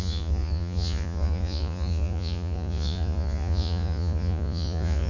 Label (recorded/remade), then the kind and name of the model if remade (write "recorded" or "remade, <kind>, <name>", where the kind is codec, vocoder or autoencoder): remade, vocoder, Vocos